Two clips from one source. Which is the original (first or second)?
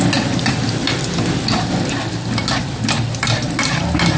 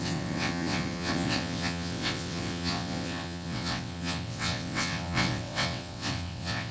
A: first